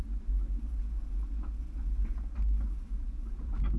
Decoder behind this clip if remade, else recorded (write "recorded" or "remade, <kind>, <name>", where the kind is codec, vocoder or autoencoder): recorded